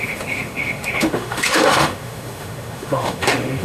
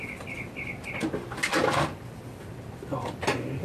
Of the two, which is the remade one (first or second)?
first